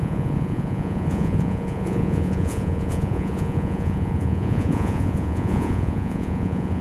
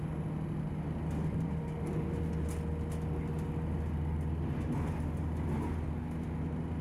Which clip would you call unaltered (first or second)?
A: second